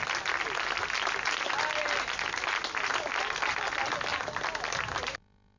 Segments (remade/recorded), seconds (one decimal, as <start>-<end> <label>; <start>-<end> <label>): 0.0-5.6 recorded

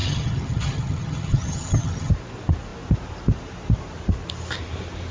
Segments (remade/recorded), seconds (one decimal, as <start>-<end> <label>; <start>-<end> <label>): 0.0-2.1 remade; 2.1-5.1 recorded

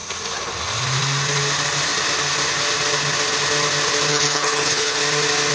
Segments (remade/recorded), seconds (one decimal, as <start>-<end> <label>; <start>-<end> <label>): 0.0-4.1 recorded; 4.1-5.0 remade; 5.0-5.5 recorded

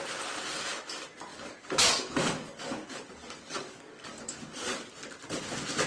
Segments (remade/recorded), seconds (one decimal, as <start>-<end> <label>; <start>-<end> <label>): 0.0-1.3 recorded; 1.3-4.8 remade; 4.8-5.9 recorded

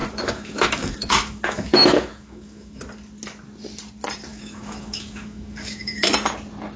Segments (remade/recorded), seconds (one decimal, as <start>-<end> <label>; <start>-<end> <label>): 0.0-2.8 remade; 2.8-4.3 recorded; 4.3-6.1 remade; 6.1-6.8 recorded